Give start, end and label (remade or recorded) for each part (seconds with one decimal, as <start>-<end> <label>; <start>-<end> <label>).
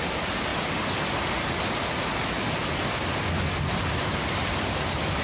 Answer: 0.0-5.2 recorded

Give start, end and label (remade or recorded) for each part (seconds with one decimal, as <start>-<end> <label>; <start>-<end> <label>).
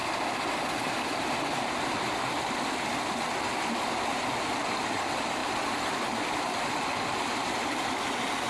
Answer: 0.0-8.5 recorded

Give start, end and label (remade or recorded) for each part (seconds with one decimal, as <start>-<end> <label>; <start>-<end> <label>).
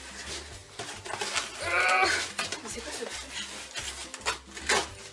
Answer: 0.0-5.1 recorded